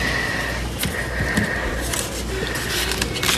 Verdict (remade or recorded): recorded